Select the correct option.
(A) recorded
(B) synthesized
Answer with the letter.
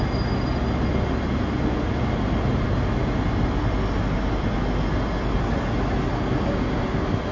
A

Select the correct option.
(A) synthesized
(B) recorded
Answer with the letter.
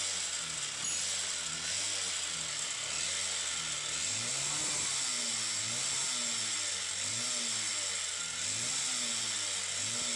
B